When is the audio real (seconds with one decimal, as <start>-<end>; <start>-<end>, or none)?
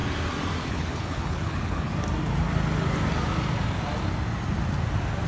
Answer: 0.0-0.7; 1.9-5.3